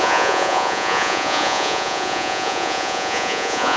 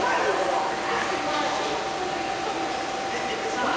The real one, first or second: second